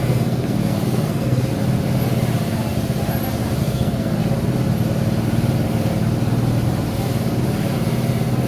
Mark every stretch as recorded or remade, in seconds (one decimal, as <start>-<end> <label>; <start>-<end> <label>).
0.0-1.5 remade; 1.5-3.6 recorded; 3.6-4.2 remade; 4.2-8.5 recorded